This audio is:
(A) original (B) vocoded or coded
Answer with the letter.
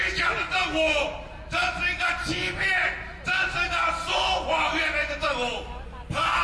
A